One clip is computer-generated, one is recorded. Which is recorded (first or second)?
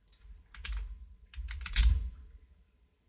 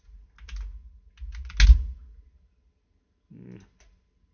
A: second